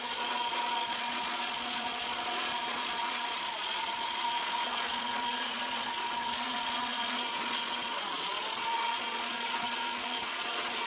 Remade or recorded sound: remade